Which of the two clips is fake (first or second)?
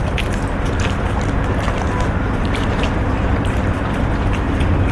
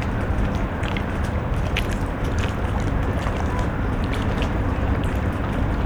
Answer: second